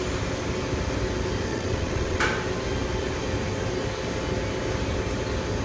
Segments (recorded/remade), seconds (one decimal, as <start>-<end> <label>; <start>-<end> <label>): 0.0-1.5 recorded; 1.5-2.2 remade; 2.2-5.6 recorded